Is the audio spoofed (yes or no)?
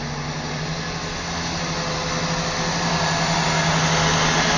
no